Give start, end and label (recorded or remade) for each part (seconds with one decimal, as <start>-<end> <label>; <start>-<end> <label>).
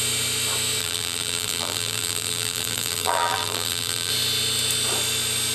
0.0-0.8 recorded; 0.8-4.1 remade; 4.1-5.5 recorded